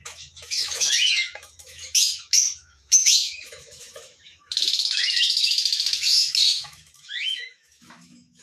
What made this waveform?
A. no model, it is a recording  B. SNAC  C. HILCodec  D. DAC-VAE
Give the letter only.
D